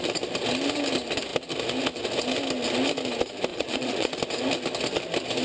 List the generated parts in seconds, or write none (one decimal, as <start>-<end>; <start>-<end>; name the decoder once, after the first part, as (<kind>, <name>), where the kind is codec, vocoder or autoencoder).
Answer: 3.5-4.2 (vocoder, Vocos)